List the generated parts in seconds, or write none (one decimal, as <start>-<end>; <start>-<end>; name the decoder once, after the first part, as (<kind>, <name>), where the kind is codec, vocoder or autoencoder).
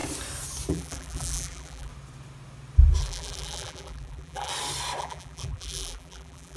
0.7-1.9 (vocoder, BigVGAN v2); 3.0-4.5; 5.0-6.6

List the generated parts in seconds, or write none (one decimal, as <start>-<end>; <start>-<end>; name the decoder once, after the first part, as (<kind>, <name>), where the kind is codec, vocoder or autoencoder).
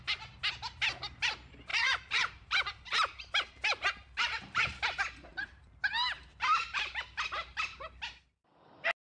1.7-4.8 (vocoder, BigVGAN v2); 5.3-6.8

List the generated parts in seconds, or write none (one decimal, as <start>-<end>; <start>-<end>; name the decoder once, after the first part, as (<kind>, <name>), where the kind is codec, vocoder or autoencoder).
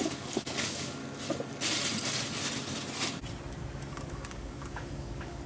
0.0-1.0 (codec, DAC); 3.8-5.5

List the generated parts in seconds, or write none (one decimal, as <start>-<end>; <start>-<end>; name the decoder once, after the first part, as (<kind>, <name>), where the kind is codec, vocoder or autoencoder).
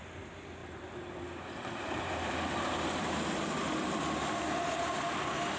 0.6-3.9 (vocoder, BigVGAN v2)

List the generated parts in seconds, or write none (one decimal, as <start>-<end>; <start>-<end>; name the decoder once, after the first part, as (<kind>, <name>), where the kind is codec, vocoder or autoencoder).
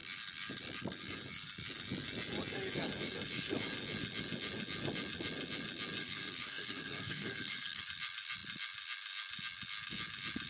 6.0-7.8 (codec, SNAC)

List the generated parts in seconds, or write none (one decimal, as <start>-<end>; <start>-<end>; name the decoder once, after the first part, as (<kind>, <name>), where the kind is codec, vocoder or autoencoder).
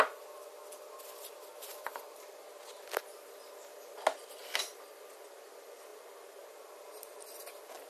none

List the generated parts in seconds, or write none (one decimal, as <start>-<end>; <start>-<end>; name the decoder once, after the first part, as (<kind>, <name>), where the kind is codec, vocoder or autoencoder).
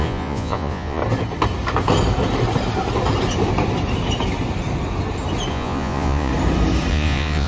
0.0-1.0 (vocoder, Vocos); 5.5-6.3; 6.9-7.5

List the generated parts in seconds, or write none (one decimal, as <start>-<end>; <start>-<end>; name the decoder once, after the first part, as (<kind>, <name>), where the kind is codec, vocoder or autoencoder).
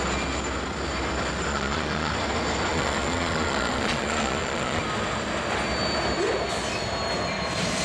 1.5-2.1 (vocoder, Vocos); 2.7-4.8